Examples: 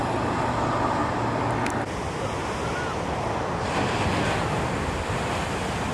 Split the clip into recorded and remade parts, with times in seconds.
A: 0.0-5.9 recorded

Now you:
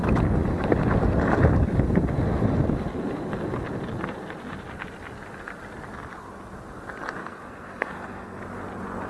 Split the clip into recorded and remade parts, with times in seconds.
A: 0.0-7.2 recorded; 7.2-8.4 remade; 8.4-9.1 recorded

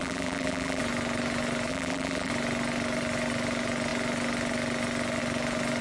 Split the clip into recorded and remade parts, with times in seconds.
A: 0.0-0.8 remade; 0.8-1.7 recorded; 1.7-2.3 remade; 2.3-5.8 recorded

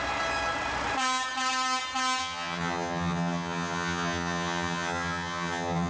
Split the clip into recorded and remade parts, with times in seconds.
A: 0.0-2.2 recorded; 2.2-5.9 remade

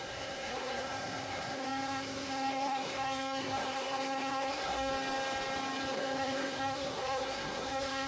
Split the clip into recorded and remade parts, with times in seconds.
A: 0.0-4.9 remade; 4.9-5.9 recorded; 5.9-8.1 remade

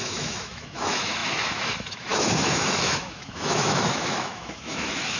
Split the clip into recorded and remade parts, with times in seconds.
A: 0.0-5.2 remade

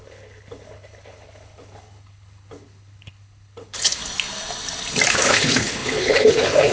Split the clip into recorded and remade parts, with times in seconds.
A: 0.0-4.0 remade; 4.0-5.1 recorded; 5.1-6.7 remade